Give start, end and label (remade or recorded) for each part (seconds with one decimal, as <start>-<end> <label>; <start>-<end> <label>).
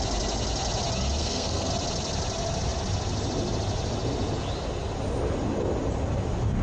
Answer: 0.0-1.2 recorded; 1.2-1.7 remade; 1.7-6.6 recorded